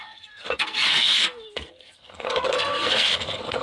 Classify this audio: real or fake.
fake